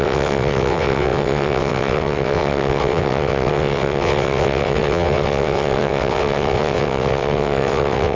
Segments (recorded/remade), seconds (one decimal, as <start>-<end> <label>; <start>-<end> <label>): 0.0-8.2 remade